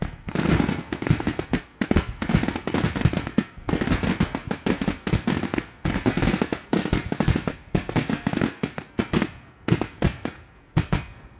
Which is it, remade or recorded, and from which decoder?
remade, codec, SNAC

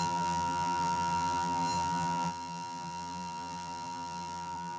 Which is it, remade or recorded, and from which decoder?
remade, vocoder, BigVGAN v2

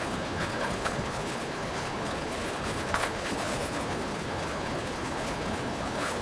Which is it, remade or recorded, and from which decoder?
remade, codec, HILCodec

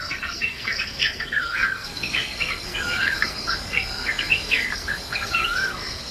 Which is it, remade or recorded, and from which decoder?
remade, codec, SNAC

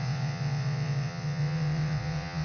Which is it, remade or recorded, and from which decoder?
remade, vocoder, WaveNeXt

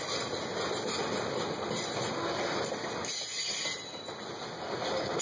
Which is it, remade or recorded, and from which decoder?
recorded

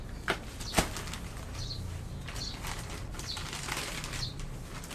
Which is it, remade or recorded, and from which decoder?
recorded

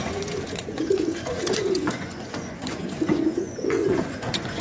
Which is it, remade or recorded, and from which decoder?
remade, vocoder, Vocos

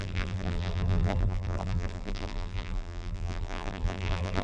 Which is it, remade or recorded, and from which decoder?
remade, vocoder, BigVGAN v2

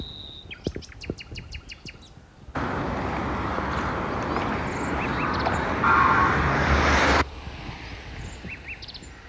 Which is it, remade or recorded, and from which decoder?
recorded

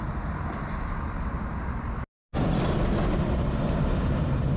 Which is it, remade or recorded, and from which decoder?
recorded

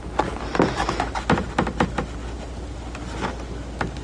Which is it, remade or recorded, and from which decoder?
recorded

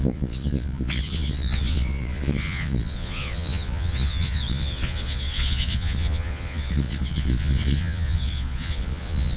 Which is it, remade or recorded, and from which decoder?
remade, vocoder, Vocos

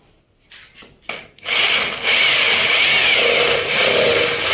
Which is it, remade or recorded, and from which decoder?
recorded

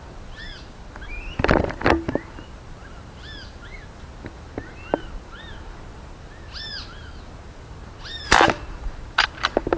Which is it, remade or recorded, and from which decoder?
recorded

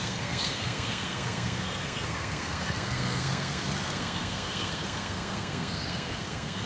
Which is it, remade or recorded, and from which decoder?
remade, codec, SNAC